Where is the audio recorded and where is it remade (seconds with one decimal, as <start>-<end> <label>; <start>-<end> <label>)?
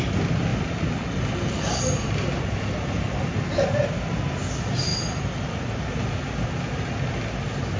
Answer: 0.0-7.8 recorded